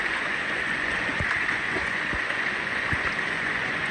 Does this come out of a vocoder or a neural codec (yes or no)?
yes